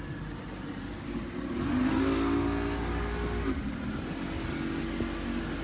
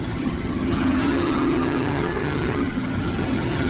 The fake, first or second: second